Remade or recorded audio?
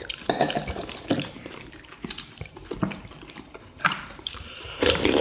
remade